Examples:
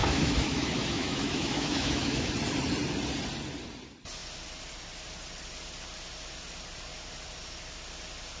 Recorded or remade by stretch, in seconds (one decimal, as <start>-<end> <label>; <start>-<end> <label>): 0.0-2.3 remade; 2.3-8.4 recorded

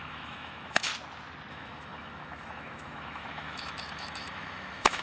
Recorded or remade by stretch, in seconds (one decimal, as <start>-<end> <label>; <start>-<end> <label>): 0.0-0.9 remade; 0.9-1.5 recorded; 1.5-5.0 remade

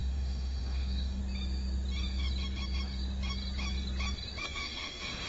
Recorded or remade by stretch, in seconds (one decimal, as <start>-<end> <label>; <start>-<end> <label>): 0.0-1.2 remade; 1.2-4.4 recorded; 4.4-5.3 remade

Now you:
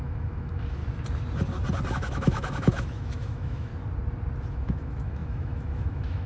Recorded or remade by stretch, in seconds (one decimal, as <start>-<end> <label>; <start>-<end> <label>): 0.0-0.8 remade; 0.8-1.9 recorded; 1.9-3.7 remade; 3.7-4.5 recorded; 4.5-6.3 remade

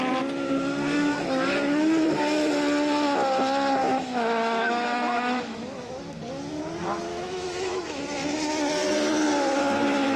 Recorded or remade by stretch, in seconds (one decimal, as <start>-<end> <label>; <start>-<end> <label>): 0.0-3.8 recorded; 3.8-6.2 remade; 6.2-7.1 recorded; 7.1-8.0 remade; 8.0-10.2 recorded

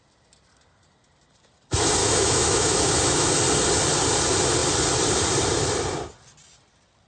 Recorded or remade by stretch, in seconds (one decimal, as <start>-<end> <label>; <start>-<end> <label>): 0.0-2.0 recorded; 2.0-3.3 remade; 3.3-7.1 recorded

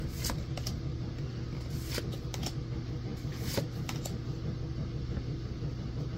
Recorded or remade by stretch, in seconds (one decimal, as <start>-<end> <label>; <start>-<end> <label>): 0.0-6.2 recorded

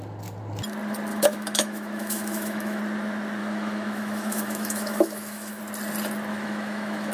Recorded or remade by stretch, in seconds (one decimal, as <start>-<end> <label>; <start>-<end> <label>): 0.0-1.1 recorded; 1.1-2.8 remade; 2.8-3.4 recorded; 3.4-5.6 remade; 5.6-6.3 recorded; 6.3-7.1 remade